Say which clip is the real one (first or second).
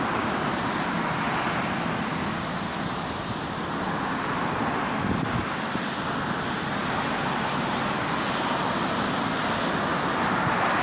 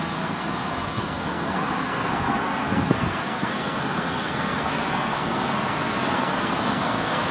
first